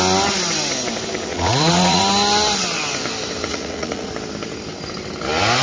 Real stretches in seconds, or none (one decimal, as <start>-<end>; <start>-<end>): 0.0-1.3; 2.0-3.5; 4.1-5.6